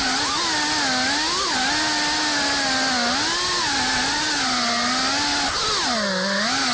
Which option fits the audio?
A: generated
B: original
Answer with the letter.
B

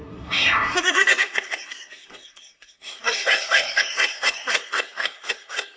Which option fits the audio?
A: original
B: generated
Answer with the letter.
B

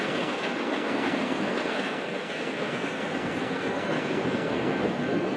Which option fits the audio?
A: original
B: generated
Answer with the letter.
B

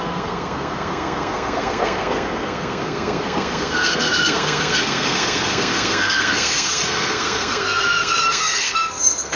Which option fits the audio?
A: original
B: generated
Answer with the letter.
B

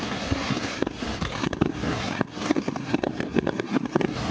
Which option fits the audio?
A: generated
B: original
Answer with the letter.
A